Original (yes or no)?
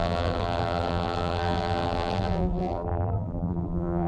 no